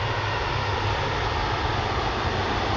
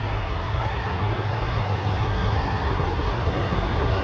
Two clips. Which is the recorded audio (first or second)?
first